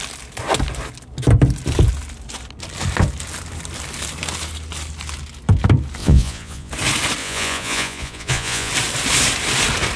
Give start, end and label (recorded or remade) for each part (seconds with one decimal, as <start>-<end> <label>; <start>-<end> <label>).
0.0-6.0 recorded; 6.0-6.7 remade; 6.7-7.2 recorded; 7.2-8.7 remade; 8.7-10.0 recorded